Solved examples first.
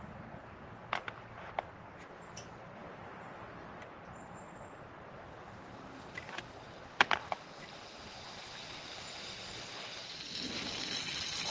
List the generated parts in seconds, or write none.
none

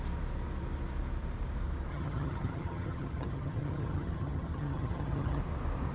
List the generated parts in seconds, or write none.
1.9-5.4 (vocoder, HiFi-GAN)

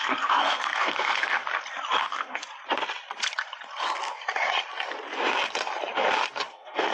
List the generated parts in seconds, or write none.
0.0-1.4 (codec, SNAC); 2.0-2.4; 6.5-6.9

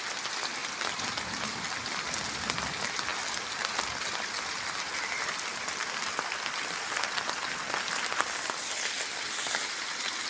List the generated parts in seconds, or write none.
0.6-1.9 (vocoder, BigVGAN v2); 3.1-7.8